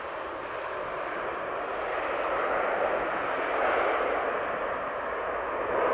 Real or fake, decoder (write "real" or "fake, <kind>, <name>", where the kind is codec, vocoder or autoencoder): real